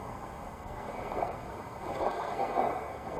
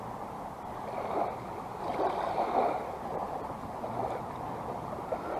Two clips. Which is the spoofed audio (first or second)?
first